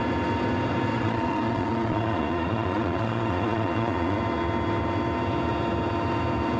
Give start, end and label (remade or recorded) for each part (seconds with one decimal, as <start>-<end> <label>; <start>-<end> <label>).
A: 0.0-0.9 recorded; 0.9-4.2 remade; 4.2-6.6 recorded